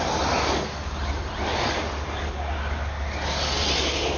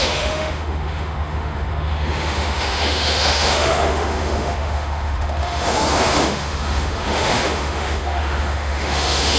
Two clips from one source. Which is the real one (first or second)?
first